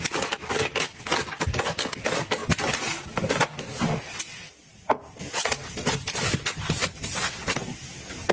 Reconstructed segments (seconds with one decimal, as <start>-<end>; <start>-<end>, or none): none